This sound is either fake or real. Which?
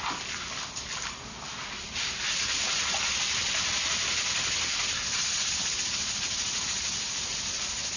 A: real